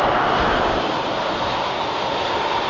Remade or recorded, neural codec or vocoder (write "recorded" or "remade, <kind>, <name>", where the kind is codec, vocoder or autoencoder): recorded